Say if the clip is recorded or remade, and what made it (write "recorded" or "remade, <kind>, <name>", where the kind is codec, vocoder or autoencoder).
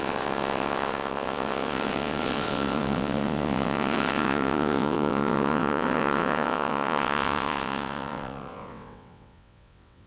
remade, vocoder, WaveNeXt